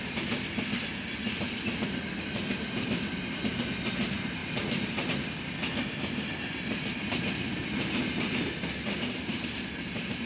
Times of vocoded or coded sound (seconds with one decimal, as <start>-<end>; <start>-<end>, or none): 4.4-5.1